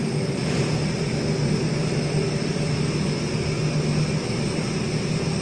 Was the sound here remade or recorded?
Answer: recorded